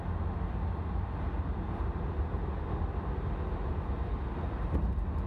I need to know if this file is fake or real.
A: real